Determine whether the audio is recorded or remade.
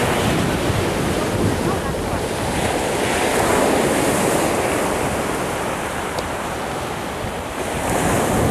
recorded